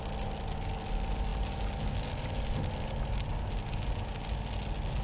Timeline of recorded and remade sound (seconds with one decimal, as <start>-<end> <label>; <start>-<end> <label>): 0.0-5.0 recorded